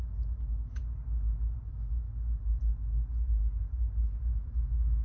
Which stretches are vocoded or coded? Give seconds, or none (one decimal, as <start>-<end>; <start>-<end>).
0.0-0.8; 1.7-2.1; 4.3-5.0